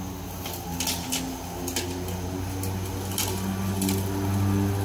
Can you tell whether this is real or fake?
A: real